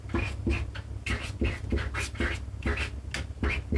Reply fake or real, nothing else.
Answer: real